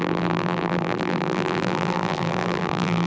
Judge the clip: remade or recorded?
remade